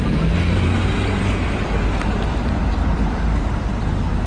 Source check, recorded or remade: remade